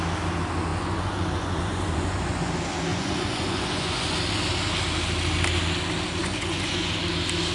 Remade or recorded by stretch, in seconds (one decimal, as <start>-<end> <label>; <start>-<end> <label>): 0.0-0.7 recorded; 0.7-2.5 remade; 2.5-2.9 recorded; 2.9-4.2 remade; 4.2-6.2 recorded; 6.2-6.9 remade; 6.9-7.5 recorded